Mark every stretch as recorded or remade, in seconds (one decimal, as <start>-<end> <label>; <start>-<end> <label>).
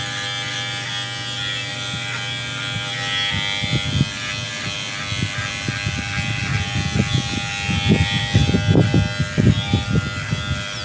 0.0-10.8 recorded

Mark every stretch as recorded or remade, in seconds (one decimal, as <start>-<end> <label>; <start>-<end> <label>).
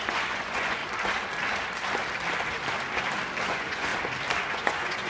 0.0-0.8 remade; 0.8-3.5 recorded; 3.5-3.9 remade; 3.9-4.5 recorded; 4.5-5.1 remade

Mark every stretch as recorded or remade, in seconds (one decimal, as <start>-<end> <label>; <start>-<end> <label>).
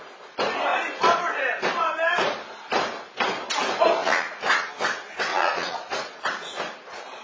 0.0-4.0 recorded; 4.0-4.7 remade; 4.7-5.3 recorded; 5.3-6.2 remade; 6.2-7.2 recorded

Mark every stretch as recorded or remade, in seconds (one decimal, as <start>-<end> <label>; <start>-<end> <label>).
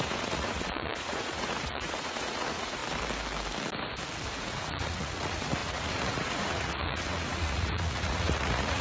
0.0-2.8 remade; 2.8-4.3 recorded; 4.3-8.8 remade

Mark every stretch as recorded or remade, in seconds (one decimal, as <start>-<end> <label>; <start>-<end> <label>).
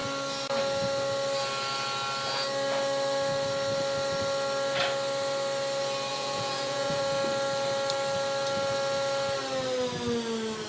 0.0-6.1 recorded; 6.1-7.0 remade; 7.0-10.7 recorded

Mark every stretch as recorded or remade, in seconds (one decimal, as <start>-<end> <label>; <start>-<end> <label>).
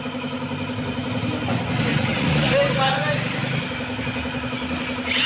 0.0-1.9 recorded; 1.9-2.5 remade; 2.5-5.3 recorded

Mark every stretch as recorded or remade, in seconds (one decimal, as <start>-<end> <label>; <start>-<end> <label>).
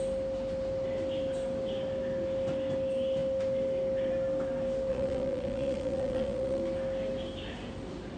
0.0-4.9 recorded; 4.9-6.6 remade; 6.6-8.2 recorded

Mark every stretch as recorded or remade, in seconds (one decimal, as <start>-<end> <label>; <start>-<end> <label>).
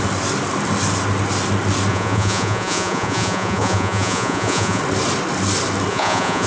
0.0-1.9 recorded; 1.9-4.8 remade; 4.8-5.9 recorded; 5.9-6.5 remade